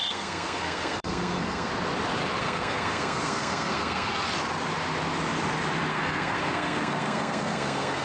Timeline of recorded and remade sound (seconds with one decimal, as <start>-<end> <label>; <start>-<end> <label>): 0.0-1.7 remade; 1.7-2.4 recorded; 2.4-4.1 remade; 4.1-5.9 recorded; 5.9-8.0 remade